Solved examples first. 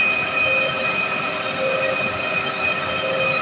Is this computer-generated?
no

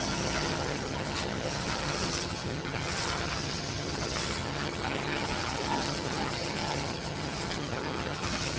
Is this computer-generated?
yes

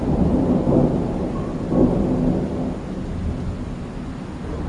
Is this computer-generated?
no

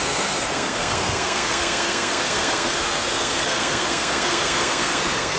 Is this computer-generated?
yes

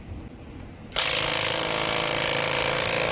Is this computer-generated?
no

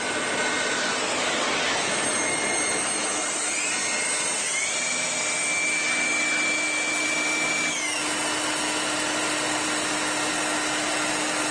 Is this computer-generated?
no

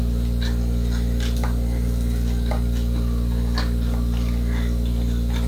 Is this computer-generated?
no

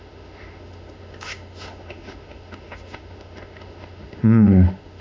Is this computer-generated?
yes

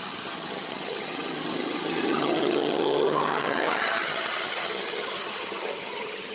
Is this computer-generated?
yes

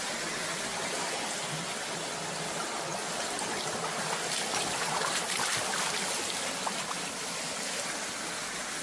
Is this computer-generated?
no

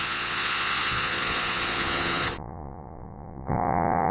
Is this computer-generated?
yes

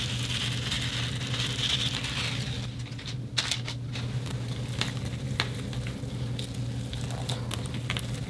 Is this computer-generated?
no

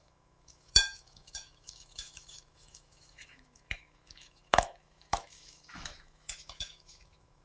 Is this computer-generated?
yes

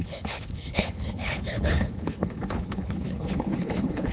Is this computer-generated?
yes